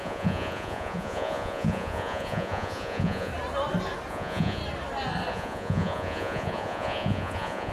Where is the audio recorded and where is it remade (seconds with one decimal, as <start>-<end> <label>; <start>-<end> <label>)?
0.0-3.3 remade; 3.3-4.1 recorded; 4.1-4.6 remade; 4.6-5.3 recorded; 5.3-7.7 remade